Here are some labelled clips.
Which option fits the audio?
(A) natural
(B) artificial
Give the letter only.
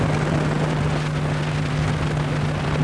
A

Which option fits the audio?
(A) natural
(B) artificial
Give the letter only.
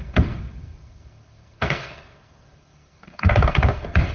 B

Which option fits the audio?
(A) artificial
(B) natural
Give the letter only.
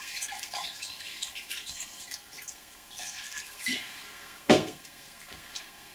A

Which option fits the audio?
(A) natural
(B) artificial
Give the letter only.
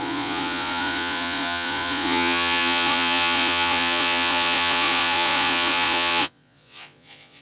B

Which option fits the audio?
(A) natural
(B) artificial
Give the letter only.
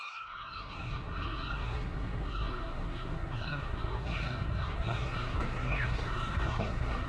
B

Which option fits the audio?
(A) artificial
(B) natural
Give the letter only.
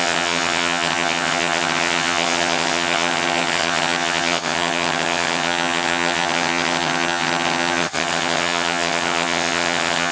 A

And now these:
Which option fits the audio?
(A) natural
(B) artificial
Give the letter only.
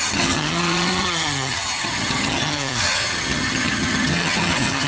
B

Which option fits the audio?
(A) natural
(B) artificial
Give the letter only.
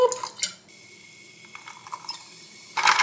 A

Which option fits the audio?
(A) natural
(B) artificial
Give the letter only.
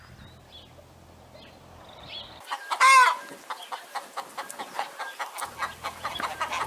A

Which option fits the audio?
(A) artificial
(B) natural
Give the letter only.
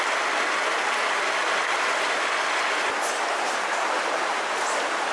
B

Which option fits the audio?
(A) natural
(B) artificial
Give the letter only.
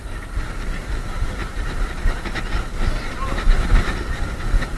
A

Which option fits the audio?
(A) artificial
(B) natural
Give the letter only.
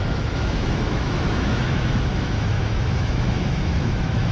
A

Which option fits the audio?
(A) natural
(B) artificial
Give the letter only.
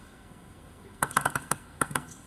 B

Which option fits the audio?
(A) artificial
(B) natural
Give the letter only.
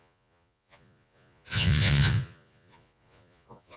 A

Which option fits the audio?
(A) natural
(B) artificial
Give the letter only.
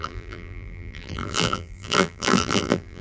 B